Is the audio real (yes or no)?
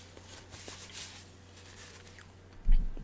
no